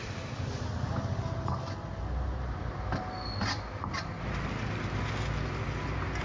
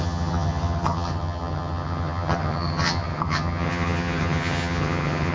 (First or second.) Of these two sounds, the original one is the first